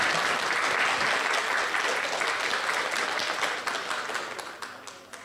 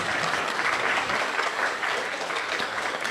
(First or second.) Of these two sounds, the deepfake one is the second